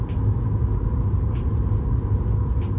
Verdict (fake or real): real